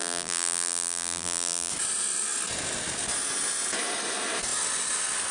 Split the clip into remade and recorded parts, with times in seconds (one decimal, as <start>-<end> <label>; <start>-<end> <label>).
0.0-1.7 remade; 1.7-5.3 recorded